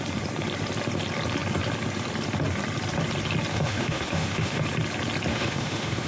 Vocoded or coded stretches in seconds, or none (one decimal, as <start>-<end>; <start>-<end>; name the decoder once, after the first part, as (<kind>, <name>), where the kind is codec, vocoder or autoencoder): 3.5-4.6 (autoencoder, DAC-VAE); 5.3-6.1